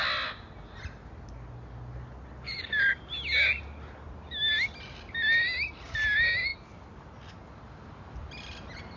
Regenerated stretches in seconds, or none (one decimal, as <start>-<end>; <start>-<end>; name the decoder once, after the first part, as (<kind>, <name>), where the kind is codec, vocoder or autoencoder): none